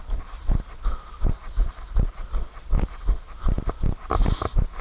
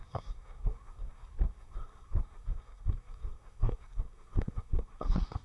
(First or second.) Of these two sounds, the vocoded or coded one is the second